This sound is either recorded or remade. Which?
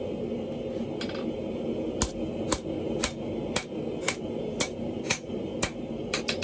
recorded